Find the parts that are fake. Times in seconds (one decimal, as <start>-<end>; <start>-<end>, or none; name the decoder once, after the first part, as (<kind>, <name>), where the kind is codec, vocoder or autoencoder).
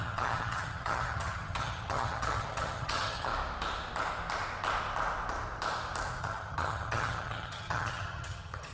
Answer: 0.0-3.3 (vocoder, HiFi-GAN); 6.2-8.7